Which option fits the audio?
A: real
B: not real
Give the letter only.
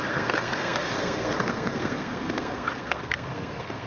B